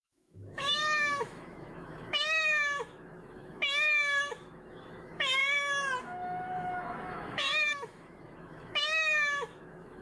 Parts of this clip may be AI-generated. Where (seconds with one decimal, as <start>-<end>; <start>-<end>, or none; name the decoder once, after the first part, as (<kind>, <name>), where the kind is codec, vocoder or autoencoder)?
0.0-5.4 (autoencoder, DAC-VAE); 6.0-10.0